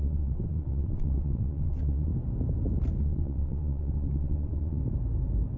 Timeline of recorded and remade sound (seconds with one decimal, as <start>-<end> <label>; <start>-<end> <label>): 0.0-2.1 remade; 2.1-3.0 recorded; 3.0-4.8 remade; 4.8-5.6 recorded

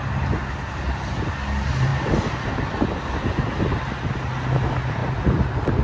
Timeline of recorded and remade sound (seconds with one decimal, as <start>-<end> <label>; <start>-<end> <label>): 0.0-5.8 recorded

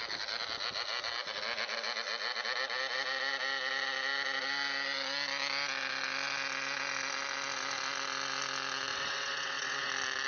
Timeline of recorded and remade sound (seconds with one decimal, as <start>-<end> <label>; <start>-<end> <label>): 0.0-8.9 recorded; 8.9-9.9 remade; 9.9-10.3 recorded

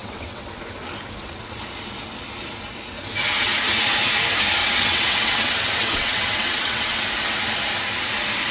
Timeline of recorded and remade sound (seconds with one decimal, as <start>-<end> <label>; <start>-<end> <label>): 0.0-0.6 remade; 0.6-4.6 recorded; 4.6-7.0 remade; 7.0-8.5 recorded

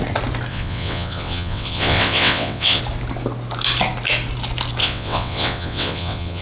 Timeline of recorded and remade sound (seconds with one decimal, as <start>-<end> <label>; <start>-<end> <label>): 0.0-0.5 recorded; 0.5-2.8 remade; 2.8-4.8 recorded; 4.8-6.4 remade